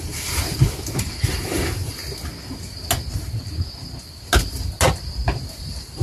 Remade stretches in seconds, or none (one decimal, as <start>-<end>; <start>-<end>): 0.0-0.4; 1.0-2.0; 5.6-6.0